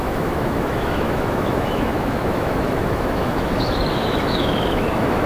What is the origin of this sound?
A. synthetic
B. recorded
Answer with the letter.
A